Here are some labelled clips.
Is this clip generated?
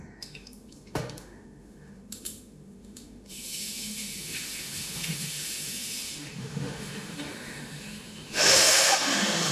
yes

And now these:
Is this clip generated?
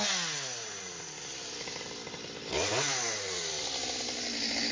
no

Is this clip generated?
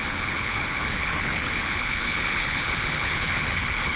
yes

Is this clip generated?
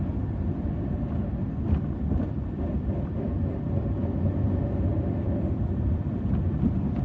yes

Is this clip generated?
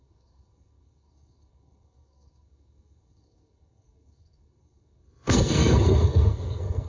yes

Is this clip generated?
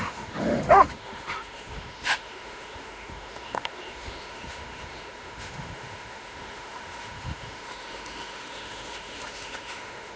yes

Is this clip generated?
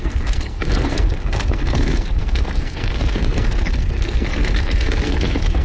yes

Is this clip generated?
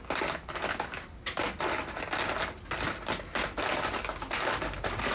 no